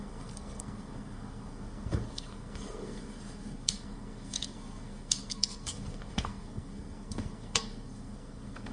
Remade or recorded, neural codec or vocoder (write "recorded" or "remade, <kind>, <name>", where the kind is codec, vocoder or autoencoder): remade, codec, SNAC